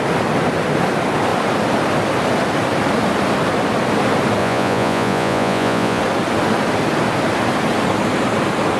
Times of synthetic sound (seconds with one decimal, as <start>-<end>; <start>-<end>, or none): 4.4-6.0